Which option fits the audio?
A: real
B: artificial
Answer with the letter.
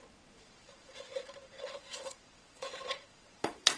B